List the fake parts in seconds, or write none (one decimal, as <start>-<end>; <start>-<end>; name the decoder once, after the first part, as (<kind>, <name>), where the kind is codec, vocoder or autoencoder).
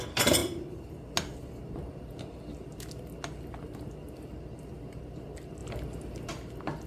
none